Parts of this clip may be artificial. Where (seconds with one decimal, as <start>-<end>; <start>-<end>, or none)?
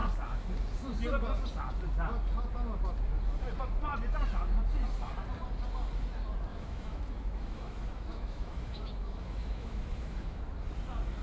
6.5-10.4